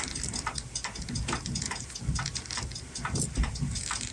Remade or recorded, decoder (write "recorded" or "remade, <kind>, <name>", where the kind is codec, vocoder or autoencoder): recorded